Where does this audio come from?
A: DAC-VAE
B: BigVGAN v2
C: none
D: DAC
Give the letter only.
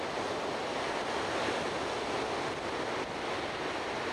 C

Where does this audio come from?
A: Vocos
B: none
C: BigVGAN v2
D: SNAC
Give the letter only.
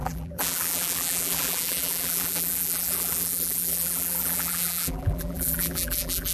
C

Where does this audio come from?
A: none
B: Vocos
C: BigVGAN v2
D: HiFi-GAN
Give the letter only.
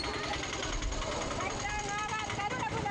A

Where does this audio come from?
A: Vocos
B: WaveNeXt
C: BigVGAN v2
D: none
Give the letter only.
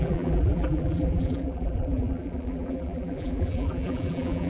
C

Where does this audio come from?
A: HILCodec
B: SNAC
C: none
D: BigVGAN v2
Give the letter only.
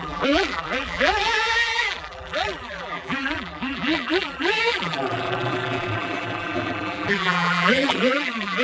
D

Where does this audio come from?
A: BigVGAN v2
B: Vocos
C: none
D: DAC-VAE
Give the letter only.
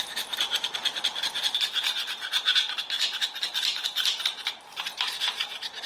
C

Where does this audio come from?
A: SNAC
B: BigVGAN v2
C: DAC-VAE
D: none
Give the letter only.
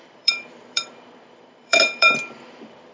B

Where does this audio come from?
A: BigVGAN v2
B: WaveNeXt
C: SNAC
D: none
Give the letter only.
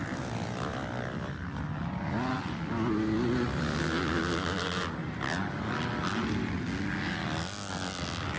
D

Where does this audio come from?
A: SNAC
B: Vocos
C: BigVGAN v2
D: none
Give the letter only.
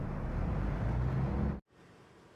D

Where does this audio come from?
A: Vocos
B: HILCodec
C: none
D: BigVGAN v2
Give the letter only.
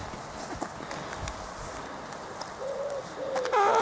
C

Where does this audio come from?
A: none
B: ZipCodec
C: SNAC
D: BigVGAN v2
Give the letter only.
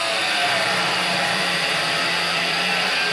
D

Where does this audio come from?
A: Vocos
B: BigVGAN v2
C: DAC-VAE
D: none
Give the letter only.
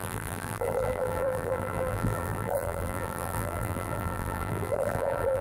B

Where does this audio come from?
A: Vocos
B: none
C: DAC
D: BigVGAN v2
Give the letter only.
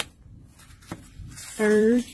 D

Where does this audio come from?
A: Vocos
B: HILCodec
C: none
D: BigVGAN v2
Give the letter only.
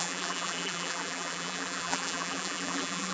D